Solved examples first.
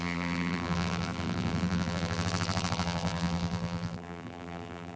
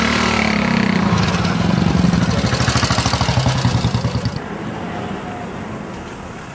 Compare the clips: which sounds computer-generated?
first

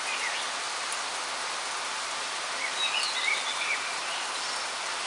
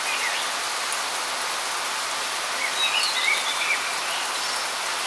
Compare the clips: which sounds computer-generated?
first